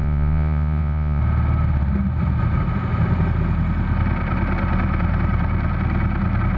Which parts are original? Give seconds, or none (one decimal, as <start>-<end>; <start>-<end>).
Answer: 1.2-6.6